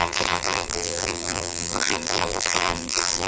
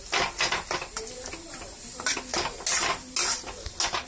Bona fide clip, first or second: second